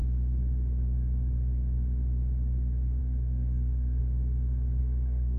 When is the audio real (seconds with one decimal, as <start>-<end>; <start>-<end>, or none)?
0.0-3.0; 4.0-4.8